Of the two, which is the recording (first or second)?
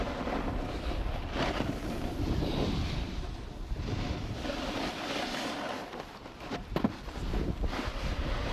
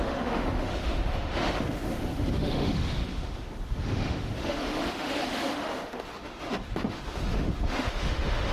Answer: first